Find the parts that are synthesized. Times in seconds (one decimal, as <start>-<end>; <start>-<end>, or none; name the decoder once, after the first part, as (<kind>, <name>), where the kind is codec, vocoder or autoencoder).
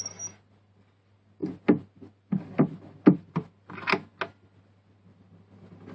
none